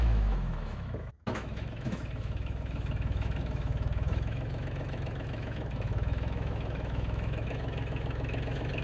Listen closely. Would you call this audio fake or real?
fake